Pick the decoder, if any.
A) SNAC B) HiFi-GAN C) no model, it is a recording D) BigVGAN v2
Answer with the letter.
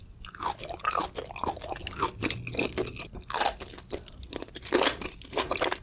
C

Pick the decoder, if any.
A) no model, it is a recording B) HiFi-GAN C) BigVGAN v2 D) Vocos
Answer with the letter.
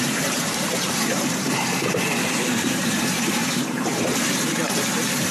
C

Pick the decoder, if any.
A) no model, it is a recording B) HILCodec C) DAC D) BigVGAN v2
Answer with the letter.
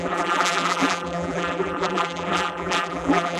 D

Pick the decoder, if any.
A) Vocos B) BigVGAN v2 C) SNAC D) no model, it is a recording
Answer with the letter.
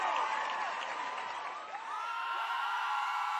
B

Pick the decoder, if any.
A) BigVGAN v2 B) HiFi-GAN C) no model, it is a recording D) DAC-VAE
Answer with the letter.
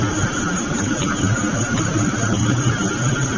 C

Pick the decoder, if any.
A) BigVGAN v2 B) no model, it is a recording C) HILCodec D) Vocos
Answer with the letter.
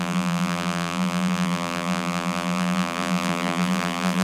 A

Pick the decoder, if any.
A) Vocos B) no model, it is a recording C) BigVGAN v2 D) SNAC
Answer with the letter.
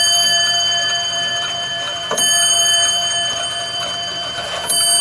C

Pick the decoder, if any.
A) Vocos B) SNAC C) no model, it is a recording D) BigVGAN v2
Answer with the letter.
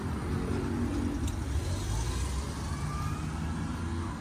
C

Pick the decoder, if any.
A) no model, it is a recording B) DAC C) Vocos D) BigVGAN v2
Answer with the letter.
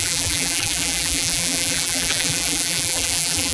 D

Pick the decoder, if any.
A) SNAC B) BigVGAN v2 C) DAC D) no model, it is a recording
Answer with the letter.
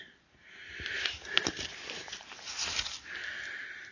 B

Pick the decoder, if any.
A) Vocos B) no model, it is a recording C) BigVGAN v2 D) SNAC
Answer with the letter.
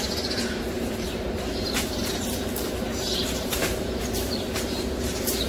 C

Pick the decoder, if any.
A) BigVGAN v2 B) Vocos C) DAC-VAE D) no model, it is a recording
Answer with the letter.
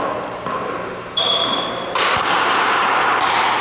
A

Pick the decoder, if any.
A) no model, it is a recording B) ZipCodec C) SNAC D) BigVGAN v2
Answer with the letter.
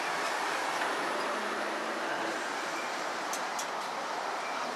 D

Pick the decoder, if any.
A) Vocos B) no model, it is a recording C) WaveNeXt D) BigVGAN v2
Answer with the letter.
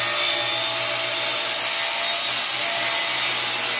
B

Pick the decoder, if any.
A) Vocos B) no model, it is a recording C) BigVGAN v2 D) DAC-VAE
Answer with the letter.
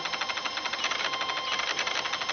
B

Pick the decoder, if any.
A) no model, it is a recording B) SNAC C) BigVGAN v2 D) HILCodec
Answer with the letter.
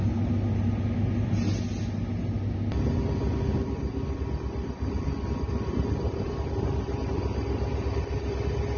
A